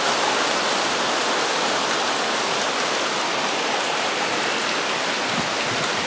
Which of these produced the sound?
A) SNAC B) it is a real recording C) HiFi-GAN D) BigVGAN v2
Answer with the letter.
B